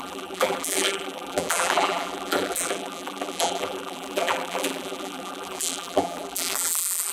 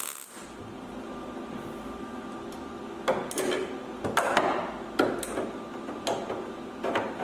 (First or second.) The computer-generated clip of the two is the first